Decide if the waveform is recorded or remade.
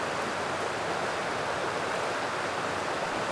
recorded